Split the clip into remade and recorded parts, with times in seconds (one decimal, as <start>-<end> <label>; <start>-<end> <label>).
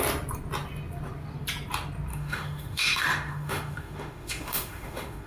0.0-2.1 recorded; 2.1-5.3 remade